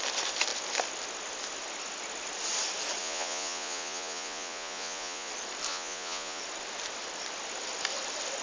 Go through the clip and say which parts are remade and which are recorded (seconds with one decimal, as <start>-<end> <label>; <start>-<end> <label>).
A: 0.0-3.0 recorded; 3.0-5.3 remade; 5.3-5.7 recorded; 5.7-6.4 remade; 6.4-8.4 recorded